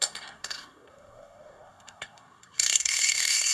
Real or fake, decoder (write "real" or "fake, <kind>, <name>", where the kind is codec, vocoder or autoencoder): fake, codec, SNAC